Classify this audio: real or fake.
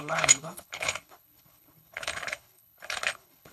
fake